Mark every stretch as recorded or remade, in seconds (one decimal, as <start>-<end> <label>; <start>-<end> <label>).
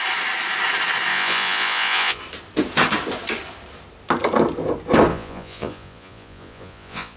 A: 0.0-1.1 recorded; 1.1-2.2 remade; 2.2-5.1 recorded; 5.1-7.2 remade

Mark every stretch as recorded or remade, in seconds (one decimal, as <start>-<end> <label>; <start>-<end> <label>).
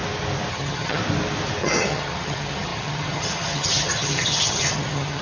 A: 0.0-0.5 recorded; 0.5-1.0 remade; 1.0-1.6 recorded; 1.6-5.2 remade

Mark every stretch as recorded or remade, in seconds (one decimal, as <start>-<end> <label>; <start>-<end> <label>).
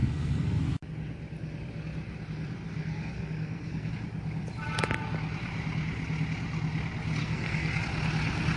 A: 0.0-0.6 remade; 0.6-2.7 recorded; 2.7-3.9 remade; 3.9-7.2 recorded; 7.2-7.8 remade; 7.8-8.6 recorded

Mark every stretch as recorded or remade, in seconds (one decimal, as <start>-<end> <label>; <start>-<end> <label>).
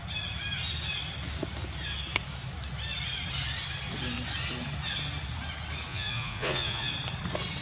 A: 0.0-5.9 recorded; 5.9-6.9 remade; 6.9-7.6 recorded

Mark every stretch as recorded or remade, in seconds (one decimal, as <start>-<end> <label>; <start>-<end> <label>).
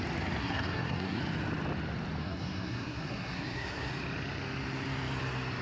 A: 0.0-0.4 recorded; 0.4-1.2 remade; 1.2-2.2 recorded; 2.2-3.9 remade; 3.9-5.6 recorded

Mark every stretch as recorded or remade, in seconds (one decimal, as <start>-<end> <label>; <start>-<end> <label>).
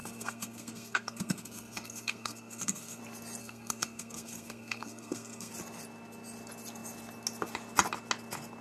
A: 0.0-3.0 remade; 3.0-3.4 recorded; 3.4-5.5 remade; 5.5-8.6 recorded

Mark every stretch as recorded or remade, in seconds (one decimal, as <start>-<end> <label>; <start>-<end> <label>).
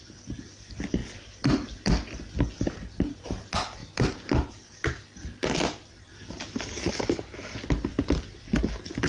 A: 0.0-9.1 recorded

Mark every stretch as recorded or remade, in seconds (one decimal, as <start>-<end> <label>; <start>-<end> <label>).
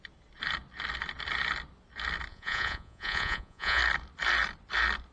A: 0.0-2.3 recorded; 2.3-3.8 remade; 3.8-5.1 recorded